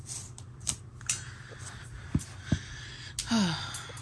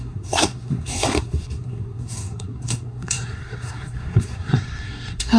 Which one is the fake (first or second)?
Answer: second